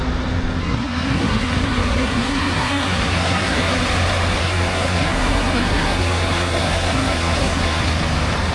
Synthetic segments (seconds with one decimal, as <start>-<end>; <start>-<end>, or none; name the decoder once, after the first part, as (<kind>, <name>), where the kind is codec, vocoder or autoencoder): 0.6-3.7 (codec, SNAC); 4.4-7.8